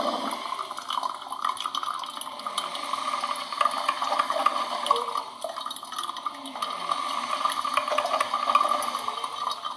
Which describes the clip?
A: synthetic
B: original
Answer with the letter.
B